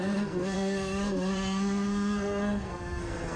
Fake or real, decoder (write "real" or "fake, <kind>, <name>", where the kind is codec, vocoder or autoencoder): fake, codec, SNAC